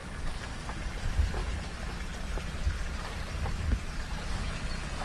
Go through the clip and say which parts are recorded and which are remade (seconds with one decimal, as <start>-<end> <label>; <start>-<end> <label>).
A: 0.0-0.5 remade; 0.5-1.4 recorded; 1.4-4.4 remade; 4.4-5.0 recorded